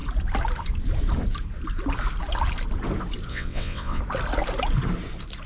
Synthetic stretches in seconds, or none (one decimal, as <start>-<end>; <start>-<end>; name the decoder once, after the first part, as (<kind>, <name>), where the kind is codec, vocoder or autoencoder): 3.3-4.0 (vocoder, WaveNeXt)